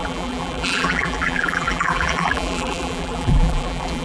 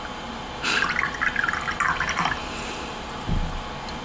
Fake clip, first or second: first